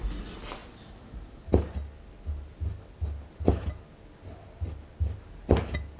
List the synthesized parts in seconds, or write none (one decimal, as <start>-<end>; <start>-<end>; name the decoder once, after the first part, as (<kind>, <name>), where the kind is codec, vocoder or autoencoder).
none